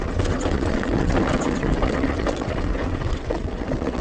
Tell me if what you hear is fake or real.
fake